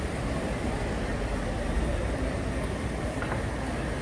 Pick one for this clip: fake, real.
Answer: real